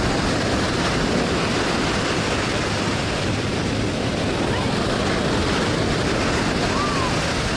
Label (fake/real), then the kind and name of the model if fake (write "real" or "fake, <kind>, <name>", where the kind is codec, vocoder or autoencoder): real